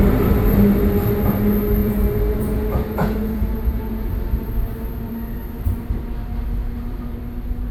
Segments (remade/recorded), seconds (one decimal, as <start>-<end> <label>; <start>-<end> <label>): 0.0-1.8 recorded; 1.8-4.1 remade; 4.1-7.7 recorded